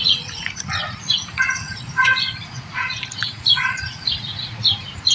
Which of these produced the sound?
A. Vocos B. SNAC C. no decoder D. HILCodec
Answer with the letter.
A